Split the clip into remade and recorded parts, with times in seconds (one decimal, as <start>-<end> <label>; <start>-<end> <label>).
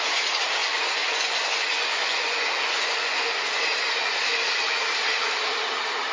0.0-0.6 recorded; 0.6-3.6 remade; 3.6-6.1 recorded